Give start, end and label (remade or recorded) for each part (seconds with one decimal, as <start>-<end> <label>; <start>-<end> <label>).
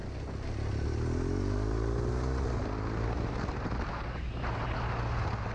0.0-5.5 recorded